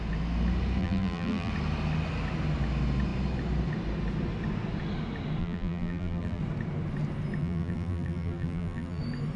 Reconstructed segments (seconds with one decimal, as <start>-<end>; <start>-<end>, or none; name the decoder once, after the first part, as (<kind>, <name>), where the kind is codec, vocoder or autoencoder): 0.8-1.5 (vocoder, BigVGAN v2); 5.4-6.4; 7.4-9.0